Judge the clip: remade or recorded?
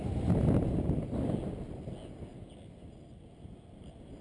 recorded